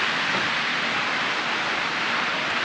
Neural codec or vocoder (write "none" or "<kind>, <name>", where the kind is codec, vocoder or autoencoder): none